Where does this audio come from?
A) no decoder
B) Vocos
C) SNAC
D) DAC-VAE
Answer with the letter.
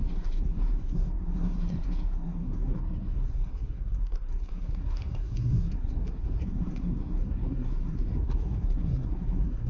C